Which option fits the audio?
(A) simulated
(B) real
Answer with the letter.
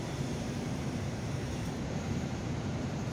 A